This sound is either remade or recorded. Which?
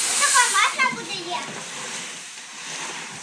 remade